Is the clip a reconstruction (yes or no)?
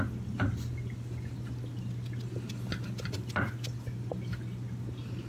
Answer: no